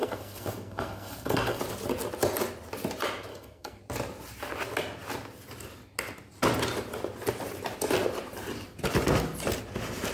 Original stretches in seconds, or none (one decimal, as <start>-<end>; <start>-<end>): 1.6-3.3; 3.8-10.1